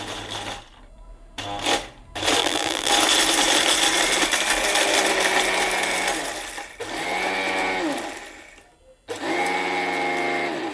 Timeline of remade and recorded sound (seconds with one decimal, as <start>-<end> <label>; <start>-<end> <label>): 0.0-2.4 recorded; 2.4-2.9 remade; 2.9-10.7 recorded